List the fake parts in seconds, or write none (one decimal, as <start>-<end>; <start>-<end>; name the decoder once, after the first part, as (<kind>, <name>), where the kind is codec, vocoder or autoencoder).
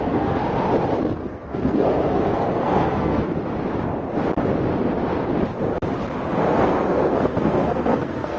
0.0-0.4 (codec, SNAC); 1.0-3.5; 6.4-8.4